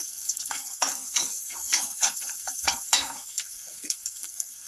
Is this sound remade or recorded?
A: remade